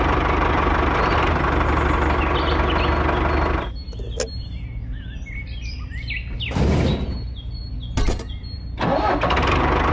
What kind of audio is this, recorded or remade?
recorded